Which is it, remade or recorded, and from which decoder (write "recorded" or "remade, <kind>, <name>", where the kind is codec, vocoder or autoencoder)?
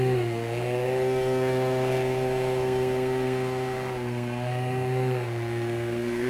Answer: remade, codec, SNAC